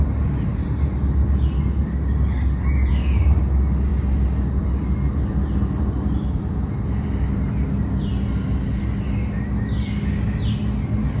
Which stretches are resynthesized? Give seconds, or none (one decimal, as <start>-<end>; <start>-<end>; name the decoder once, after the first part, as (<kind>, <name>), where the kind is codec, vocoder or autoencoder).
none